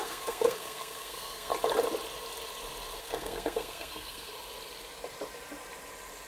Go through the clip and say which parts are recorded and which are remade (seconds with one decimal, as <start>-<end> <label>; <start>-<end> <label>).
0.0-1.5 remade; 1.5-3.0 recorded; 3.0-4.3 remade; 4.3-6.3 recorded